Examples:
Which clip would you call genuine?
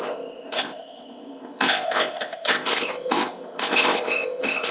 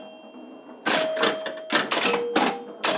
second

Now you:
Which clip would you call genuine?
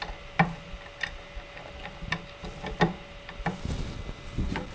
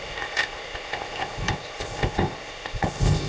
first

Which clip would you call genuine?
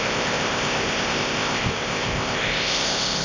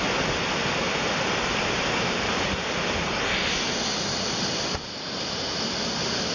second